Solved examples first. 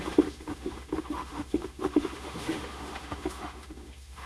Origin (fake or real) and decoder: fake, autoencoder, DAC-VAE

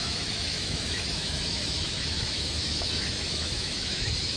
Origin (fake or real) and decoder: fake, autoencoder, DAC-VAE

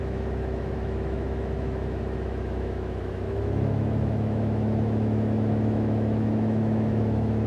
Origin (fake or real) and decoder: fake, autoencoder, DAC-VAE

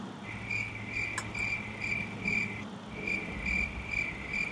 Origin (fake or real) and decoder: real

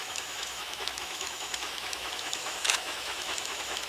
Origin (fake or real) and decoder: fake, autoencoder, DAC-VAE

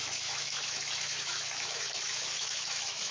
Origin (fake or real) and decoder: fake, autoencoder, DAC-VAE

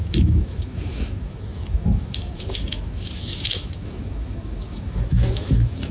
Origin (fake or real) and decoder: fake, autoencoder, DAC-VAE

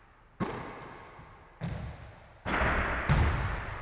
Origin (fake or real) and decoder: real